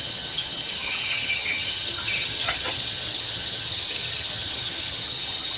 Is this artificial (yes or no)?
yes